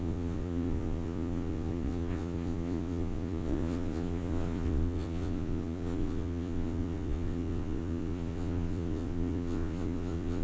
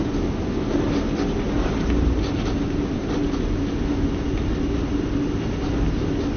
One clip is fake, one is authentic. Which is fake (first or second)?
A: first